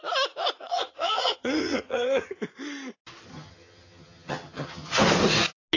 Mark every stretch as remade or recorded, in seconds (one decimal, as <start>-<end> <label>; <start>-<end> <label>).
0.0-0.7 recorded; 0.7-2.4 remade; 2.4-3.3 recorded; 3.3-4.9 remade; 4.9-5.8 recorded